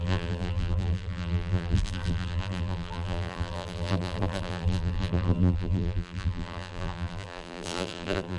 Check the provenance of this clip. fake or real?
fake